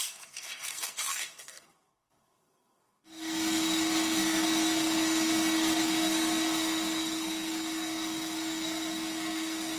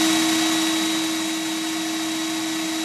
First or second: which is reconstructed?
first